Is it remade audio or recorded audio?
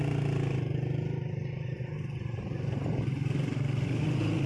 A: recorded